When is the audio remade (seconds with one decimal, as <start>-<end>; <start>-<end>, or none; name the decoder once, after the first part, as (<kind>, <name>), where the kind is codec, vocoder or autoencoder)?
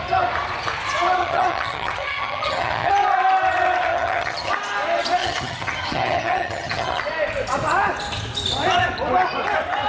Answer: 1.2-2.9 (vocoder, HiFi-GAN); 3.9-4.5; 5.2-7.0